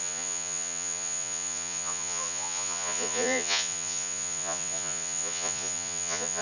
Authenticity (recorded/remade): remade